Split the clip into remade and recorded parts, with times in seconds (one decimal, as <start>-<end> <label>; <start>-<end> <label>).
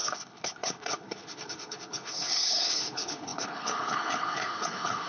0.0-5.1 remade